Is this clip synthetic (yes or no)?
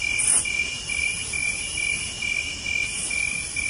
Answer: no